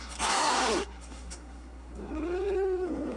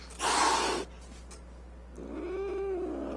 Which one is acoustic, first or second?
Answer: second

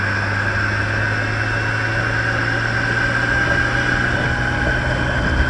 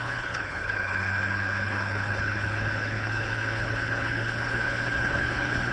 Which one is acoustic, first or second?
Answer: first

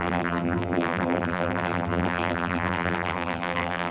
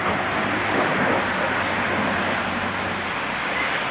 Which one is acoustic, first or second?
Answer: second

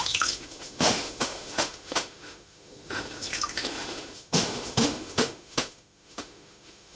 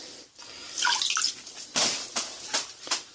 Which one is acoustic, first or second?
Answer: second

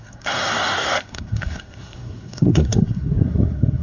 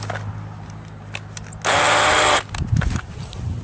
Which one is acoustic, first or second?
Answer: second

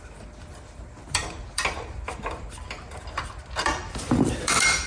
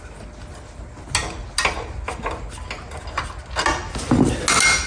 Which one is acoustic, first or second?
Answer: second